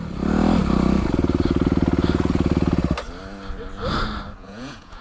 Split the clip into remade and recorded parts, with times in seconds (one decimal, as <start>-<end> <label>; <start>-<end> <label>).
0.0-4.4 recorded; 4.4-5.0 remade